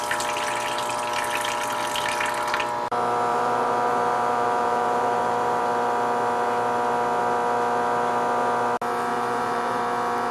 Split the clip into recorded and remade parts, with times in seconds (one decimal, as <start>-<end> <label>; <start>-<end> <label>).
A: 0.0-3.3 recorded; 3.3-5.6 remade; 5.6-9.1 recorded; 9.1-9.8 remade; 9.8-10.3 recorded